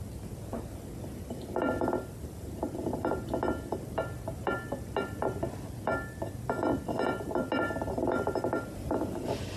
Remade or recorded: recorded